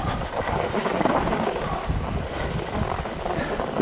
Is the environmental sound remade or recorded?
recorded